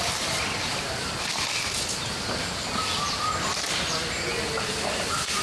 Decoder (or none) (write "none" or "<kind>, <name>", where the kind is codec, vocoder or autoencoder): none